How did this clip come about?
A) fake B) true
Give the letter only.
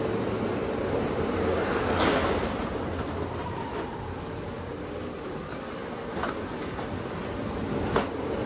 B